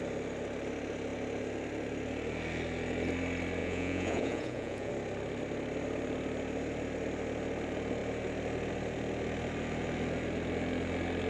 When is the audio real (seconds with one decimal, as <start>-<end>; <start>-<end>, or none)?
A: 0.0-3.6; 4.9-11.3